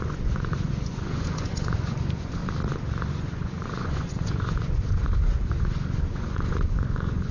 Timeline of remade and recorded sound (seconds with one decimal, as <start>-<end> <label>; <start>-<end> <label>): 0.0-2.4 remade; 2.4-3.1 recorded; 3.1-7.3 remade